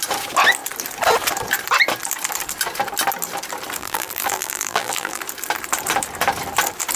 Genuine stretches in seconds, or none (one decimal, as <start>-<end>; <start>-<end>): 0.0-3.8; 5.2-7.0